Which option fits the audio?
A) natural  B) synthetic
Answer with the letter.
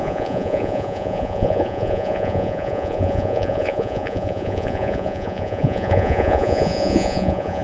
B